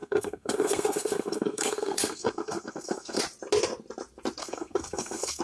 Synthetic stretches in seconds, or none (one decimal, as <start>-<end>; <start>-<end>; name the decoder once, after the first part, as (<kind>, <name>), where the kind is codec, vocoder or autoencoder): 0.0-3.2 (codec, SNAC); 4.4-5.4